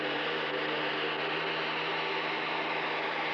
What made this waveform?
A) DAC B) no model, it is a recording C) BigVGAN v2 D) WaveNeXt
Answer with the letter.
B